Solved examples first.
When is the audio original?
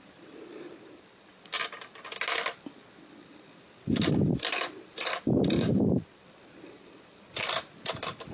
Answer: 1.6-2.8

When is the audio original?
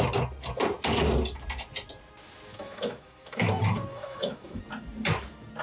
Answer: 0.0-2.5; 3.5-3.9; 4.6-5.6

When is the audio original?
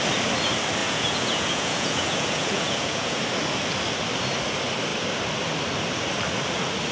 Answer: 0.0-0.8; 3.2-6.9